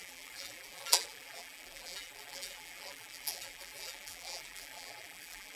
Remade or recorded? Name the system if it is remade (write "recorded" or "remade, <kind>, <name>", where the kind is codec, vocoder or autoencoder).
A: remade, vocoder, BigVGAN v2